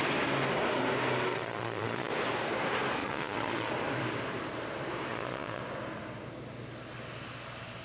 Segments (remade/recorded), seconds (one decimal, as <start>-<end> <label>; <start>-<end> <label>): 0.0-1.3 recorded; 1.3-2.1 remade; 2.1-3.0 recorded; 3.0-3.7 remade; 3.7-5.1 recorded; 5.1-5.6 remade; 5.6-7.8 recorded